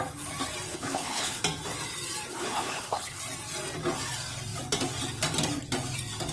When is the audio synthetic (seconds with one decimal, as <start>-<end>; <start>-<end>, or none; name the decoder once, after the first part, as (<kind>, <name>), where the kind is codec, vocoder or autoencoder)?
0.7-1.4 (codec, HILCodec); 2.3-3.2